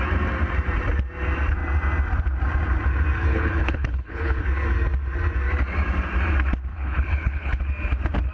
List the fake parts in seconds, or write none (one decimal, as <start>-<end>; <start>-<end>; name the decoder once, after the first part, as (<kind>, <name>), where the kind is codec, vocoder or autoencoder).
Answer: 3.3-4.4 (codec, HILCodec); 6.7-7.6